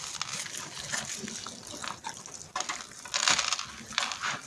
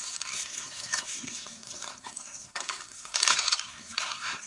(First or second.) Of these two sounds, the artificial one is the second